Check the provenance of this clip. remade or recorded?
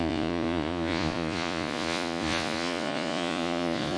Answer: remade